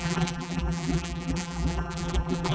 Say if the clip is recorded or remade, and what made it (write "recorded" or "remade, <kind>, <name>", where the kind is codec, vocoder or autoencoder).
remade, vocoder, BigVGAN v2